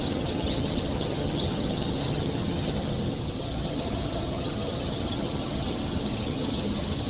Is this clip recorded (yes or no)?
no